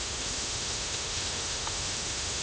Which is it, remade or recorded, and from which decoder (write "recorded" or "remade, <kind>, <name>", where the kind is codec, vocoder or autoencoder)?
remade, autoencoder, DAC-VAE